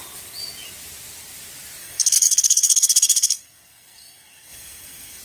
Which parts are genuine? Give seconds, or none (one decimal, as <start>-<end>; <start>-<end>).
0.0-1.8